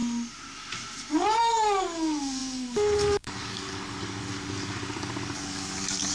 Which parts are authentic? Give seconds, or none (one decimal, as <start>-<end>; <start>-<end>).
0.0-1.4